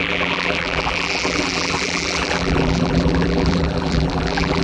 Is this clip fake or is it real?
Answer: fake